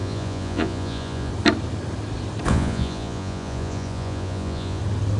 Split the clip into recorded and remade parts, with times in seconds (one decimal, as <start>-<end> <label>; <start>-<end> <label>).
0.0-1.3 remade; 1.3-2.5 recorded; 2.5-4.8 remade; 4.8-5.2 recorded